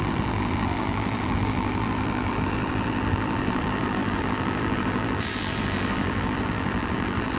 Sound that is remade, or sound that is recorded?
remade